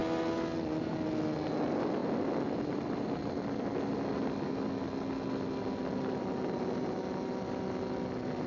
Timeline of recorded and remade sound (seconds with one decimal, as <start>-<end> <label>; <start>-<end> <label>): 0.0-8.5 recorded